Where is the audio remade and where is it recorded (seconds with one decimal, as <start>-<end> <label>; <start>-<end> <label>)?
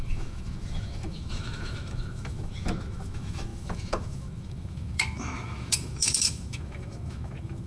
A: 0.0-7.7 remade